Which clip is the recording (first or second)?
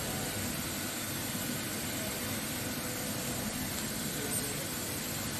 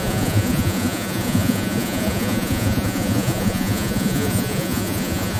first